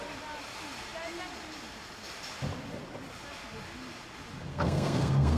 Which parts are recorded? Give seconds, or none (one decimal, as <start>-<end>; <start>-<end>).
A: 0.0-4.5